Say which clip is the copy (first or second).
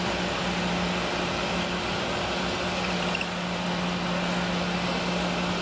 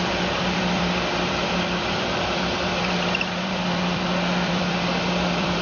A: second